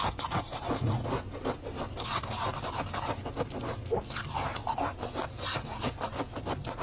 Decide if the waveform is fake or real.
real